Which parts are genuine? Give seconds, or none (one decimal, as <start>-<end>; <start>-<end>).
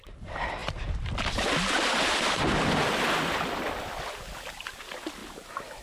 0.0-0.6; 4.1-5.8